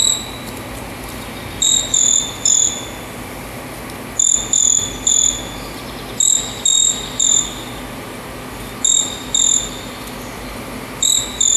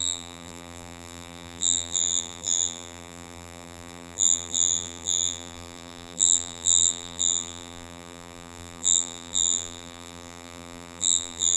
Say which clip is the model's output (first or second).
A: second